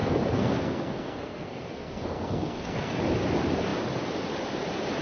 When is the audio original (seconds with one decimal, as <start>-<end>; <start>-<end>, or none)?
3.0-5.0

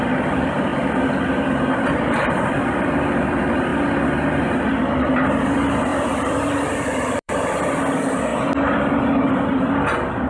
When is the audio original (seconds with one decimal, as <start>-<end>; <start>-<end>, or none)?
0.7-1.9; 3.7-4.7; 8.3-10.3

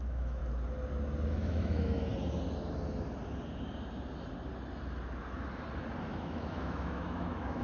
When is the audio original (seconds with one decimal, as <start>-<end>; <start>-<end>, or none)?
0.4-1.3; 2.1-6.0

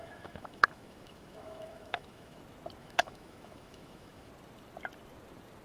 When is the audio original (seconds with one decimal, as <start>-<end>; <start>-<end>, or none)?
2.4-2.8; 4.3-5.6

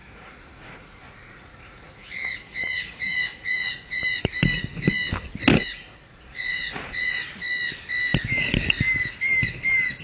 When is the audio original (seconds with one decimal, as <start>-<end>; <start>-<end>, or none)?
4.2-5.5; 7.3-10.0

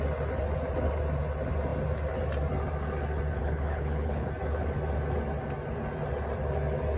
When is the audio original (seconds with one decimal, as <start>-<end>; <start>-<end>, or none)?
0.0-3.4; 4.3-7.0

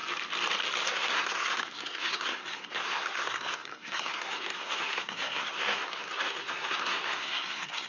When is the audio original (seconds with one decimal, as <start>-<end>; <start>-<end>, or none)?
0.0-0.9